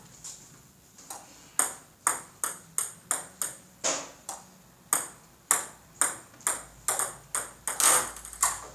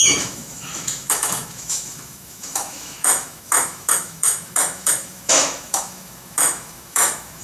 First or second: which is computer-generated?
second